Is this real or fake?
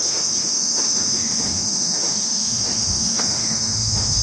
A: fake